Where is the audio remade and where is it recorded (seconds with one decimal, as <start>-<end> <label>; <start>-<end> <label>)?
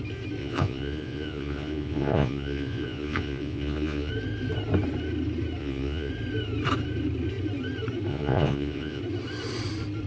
0.0-0.4 recorded; 0.4-4.1 remade; 4.1-5.6 recorded; 5.6-6.1 remade; 6.1-8.1 recorded; 8.1-9.0 remade; 9.0-10.1 recorded